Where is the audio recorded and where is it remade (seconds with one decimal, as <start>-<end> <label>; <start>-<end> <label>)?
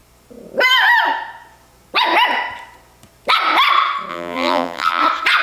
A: 0.0-4.1 recorded; 4.1-5.0 remade; 5.0-5.4 recorded